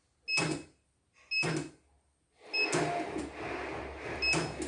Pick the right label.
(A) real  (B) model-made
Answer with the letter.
A